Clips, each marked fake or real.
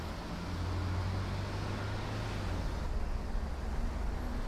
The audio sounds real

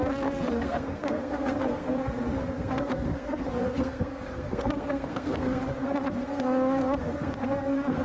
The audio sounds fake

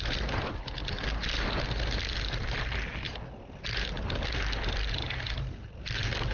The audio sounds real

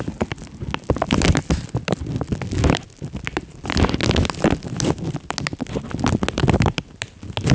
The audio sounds real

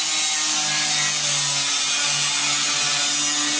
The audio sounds real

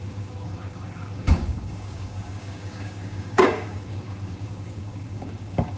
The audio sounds fake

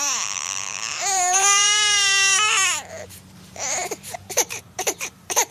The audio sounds fake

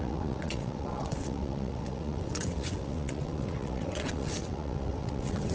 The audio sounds fake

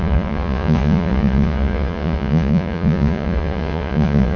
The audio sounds fake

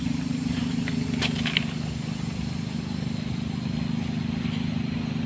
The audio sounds real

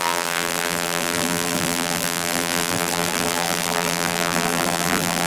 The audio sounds fake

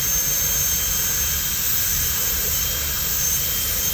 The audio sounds real